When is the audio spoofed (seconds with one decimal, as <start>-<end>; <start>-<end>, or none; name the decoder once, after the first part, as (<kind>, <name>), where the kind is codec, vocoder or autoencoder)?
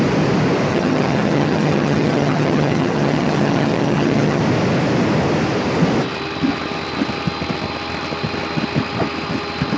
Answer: 0.7-4.4 (vocoder, HiFi-GAN)